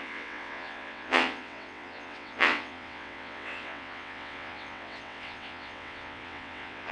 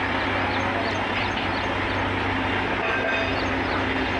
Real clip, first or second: second